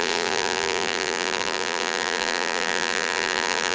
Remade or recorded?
remade